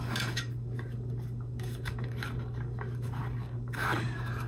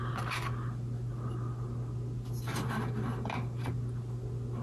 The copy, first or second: first